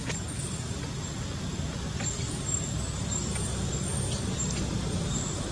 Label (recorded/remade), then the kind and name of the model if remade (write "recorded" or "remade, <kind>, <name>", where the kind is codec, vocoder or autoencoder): recorded